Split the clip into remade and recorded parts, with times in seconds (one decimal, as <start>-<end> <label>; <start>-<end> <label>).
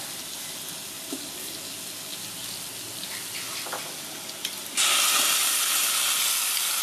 0.0-6.8 recorded